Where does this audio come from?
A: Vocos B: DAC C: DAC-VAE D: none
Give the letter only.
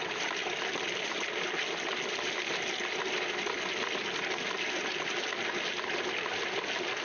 D